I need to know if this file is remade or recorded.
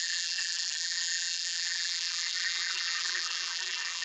remade